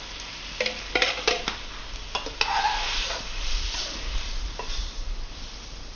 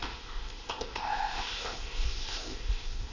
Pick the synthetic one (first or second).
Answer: second